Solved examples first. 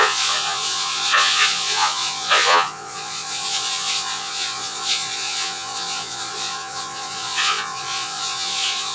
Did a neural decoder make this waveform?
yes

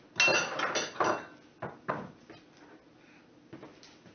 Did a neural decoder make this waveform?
no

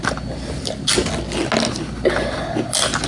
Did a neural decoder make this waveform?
no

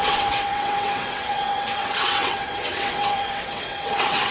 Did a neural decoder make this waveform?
yes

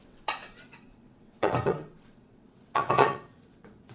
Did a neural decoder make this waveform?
yes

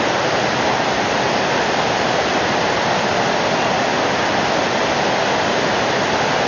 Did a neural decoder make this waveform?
no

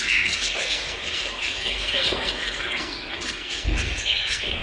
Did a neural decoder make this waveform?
yes